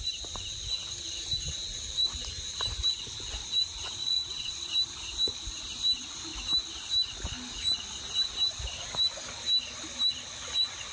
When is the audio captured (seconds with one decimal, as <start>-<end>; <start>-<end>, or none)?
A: 0.0-4.0; 4.7-10.9